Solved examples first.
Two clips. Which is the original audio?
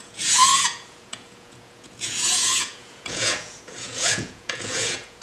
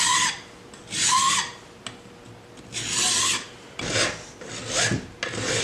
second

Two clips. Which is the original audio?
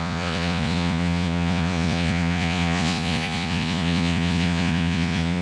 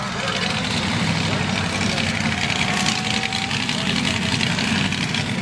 second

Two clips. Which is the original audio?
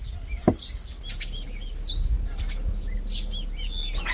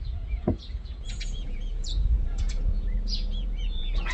first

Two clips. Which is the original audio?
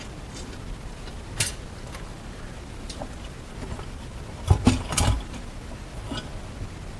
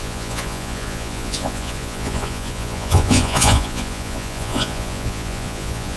first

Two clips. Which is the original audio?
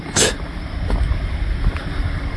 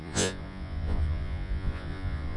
first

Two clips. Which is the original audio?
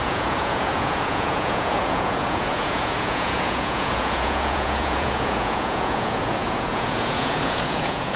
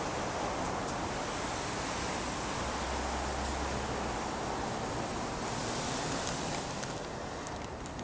second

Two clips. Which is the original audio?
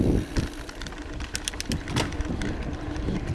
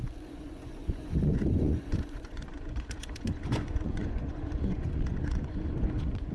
first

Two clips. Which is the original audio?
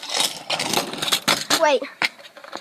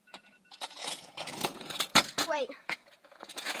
first